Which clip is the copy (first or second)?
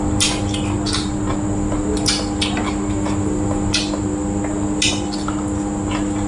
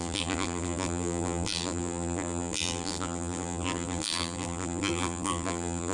second